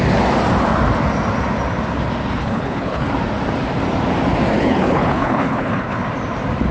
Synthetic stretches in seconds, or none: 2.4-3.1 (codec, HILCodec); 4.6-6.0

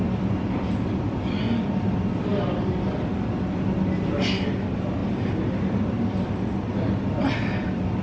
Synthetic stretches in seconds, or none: none

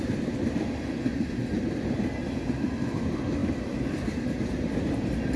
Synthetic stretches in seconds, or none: none

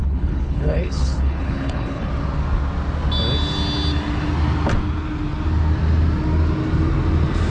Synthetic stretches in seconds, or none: 0.0-2.1 (codec, HILCodec)

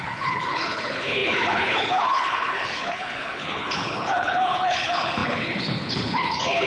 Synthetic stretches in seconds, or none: 0.0-6.7 (codec, HILCodec)

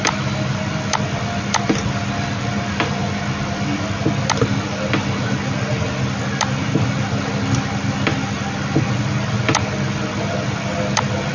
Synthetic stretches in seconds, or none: none

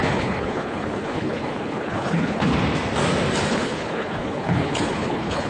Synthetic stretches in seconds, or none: 0.0-2.5 (codec, HILCodec); 3.5-5.5

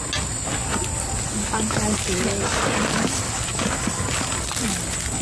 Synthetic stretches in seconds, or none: none